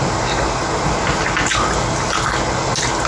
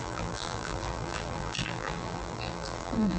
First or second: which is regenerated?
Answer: second